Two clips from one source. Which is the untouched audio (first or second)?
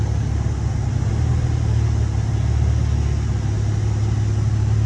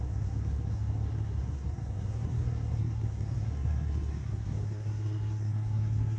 first